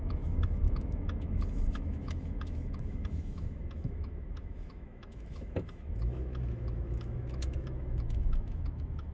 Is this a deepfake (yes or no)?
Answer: yes